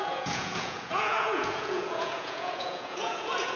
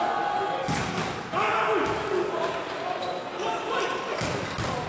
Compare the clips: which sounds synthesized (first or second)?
first